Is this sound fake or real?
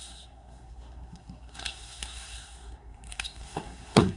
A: fake